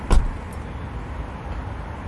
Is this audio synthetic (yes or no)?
no